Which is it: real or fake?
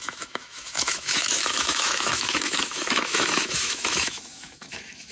fake